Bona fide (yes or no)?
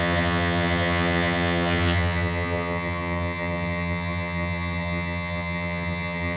no